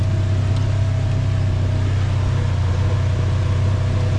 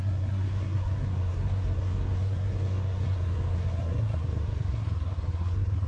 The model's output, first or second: second